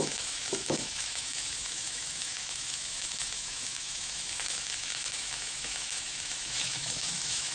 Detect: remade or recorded remade